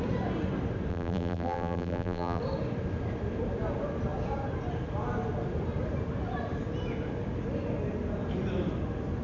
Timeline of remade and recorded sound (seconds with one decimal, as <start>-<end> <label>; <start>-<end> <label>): 0.0-0.9 recorded; 0.9-2.4 remade; 2.4-9.2 recorded